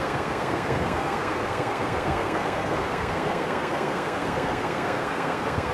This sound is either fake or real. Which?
fake